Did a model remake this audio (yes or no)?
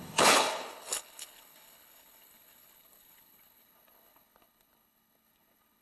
yes